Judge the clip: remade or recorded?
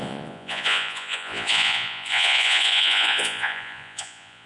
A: remade